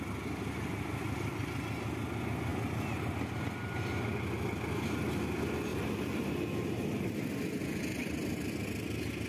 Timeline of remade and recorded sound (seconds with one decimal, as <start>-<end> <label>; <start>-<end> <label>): 0.0-5.7 recorded; 5.7-6.3 remade; 6.3-9.3 recorded